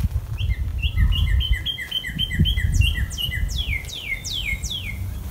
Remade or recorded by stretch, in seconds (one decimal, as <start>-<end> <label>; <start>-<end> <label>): 0.0-5.3 recorded